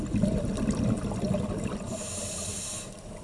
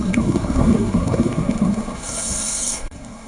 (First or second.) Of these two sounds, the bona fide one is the first